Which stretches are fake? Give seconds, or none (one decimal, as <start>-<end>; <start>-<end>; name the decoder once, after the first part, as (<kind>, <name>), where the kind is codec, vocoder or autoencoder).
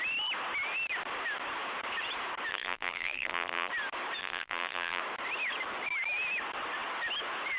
2.5-3.7 (vocoder, BigVGAN v2); 4.2-5.0